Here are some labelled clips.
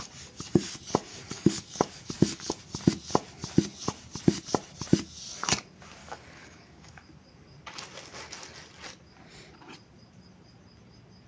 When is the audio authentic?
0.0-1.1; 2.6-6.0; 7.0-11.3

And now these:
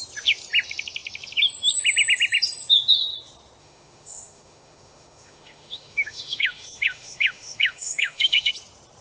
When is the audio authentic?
0.0-3.6; 8.5-9.0